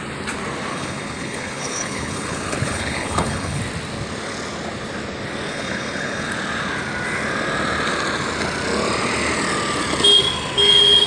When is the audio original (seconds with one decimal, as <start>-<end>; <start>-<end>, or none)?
0.0-0.7; 3.6-5.5; 6.3-11.1